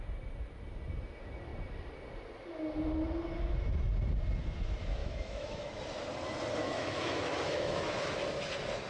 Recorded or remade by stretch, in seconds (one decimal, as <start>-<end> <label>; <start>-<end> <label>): 0.0-5.0 recorded; 5.0-5.8 remade; 5.8-6.6 recorded; 6.6-8.1 remade; 8.1-8.9 recorded